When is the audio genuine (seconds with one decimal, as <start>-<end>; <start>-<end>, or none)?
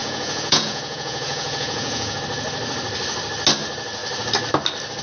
2.2-5.0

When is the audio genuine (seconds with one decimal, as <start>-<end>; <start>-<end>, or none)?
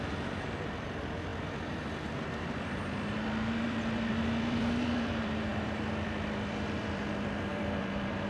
none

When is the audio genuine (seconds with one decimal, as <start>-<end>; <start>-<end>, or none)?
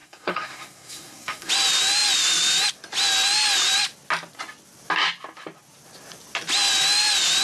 1.5-7.4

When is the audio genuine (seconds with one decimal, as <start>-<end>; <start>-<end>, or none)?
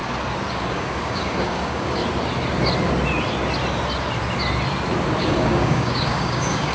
0.0-0.5; 2.0-5.2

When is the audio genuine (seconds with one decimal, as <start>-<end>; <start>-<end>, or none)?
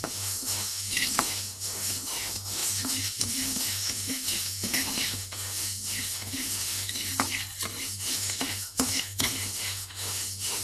7.1-7.8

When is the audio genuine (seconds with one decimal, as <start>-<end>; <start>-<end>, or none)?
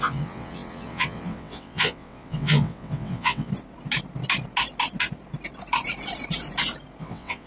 3.5-7.0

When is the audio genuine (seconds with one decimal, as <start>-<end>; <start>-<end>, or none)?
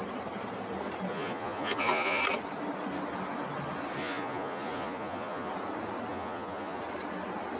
0.0-1.1; 2.2-4.0; 5.5-6.1; 6.8-7.6